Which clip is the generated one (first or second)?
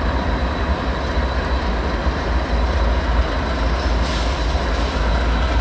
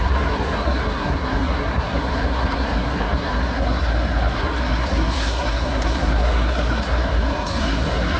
second